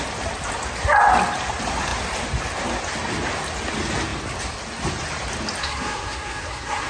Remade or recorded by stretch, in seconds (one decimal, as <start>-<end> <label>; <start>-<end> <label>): 0.0-5.6 recorded; 5.6-6.9 remade